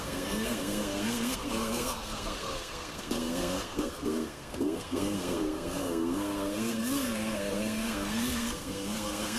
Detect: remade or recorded remade